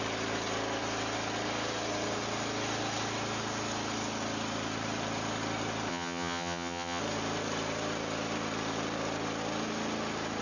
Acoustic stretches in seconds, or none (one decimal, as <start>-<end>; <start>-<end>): 0.0-5.9; 7.0-10.4